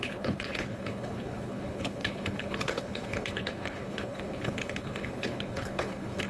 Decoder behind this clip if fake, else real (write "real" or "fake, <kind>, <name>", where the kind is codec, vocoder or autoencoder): fake, codec, HILCodec